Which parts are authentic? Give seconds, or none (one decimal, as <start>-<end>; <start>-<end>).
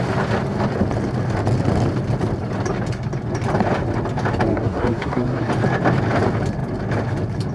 0.0-4.5; 5.5-7.5